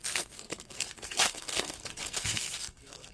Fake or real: fake